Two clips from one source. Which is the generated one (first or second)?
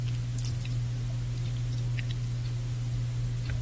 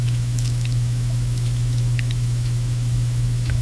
second